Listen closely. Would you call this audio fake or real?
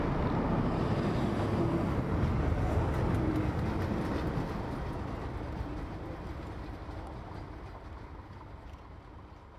real